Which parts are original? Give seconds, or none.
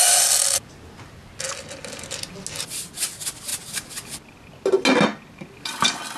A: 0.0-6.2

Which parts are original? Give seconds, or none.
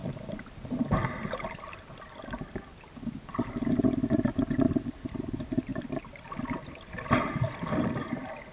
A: 0.8-5.7; 6.4-8.5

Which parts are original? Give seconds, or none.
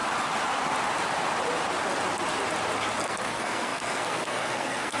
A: 0.0-3.0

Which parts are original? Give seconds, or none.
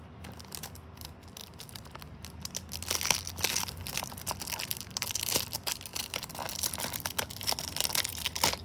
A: 0.0-8.6